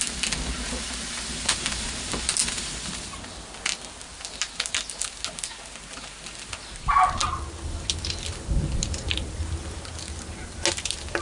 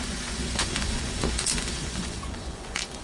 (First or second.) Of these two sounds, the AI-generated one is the second